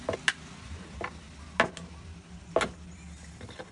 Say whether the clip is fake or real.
real